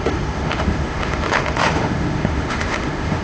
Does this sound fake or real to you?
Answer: fake